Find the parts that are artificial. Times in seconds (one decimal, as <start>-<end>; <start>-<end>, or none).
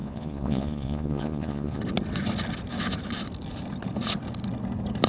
0.0-1.8